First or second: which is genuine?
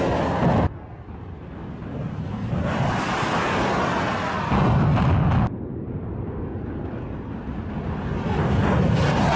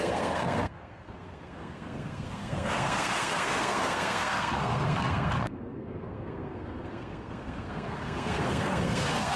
first